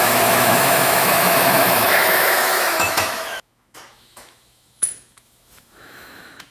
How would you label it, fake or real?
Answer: fake